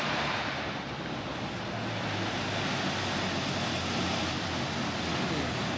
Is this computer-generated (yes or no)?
no